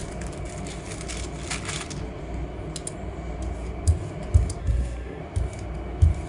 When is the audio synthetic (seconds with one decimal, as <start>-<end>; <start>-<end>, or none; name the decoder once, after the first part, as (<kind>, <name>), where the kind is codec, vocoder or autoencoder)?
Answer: 4.6-5.2 (codec, SNAC)